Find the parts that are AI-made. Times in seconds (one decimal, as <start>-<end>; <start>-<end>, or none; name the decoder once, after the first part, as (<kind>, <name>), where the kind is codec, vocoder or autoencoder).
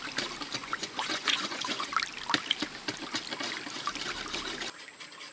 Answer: 0.6-1.9 (vocoder, Vocos)